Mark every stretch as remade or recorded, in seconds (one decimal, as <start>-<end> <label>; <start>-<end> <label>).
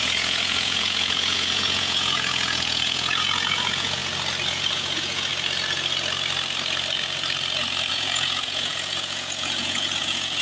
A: 0.0-4.0 remade; 4.0-4.5 recorded; 4.5-5.3 remade; 5.3-7.9 recorded; 7.9-10.4 remade